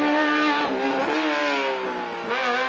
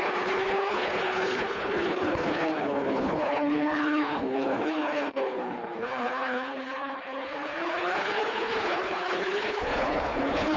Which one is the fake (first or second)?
second